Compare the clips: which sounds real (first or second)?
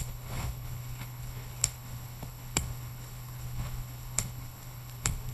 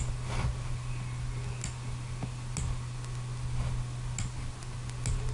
second